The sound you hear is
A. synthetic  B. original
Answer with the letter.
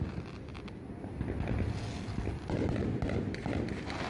B